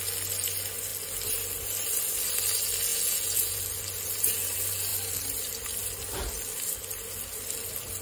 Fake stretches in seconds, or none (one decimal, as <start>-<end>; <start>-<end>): 2.9-3.6